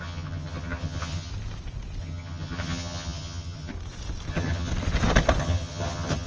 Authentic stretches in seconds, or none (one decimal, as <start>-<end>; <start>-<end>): 1.3-2.0; 3.7-4.3; 4.7-5.4